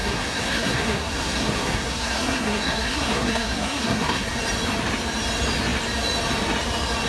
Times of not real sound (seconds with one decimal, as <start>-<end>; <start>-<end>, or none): 0.0-4.3